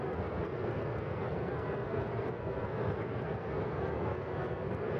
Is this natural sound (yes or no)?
no